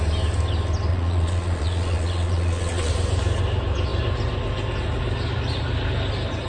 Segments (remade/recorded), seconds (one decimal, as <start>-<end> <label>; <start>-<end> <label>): 0.0-0.9 recorded; 0.9-2.9 remade; 2.9-6.5 recorded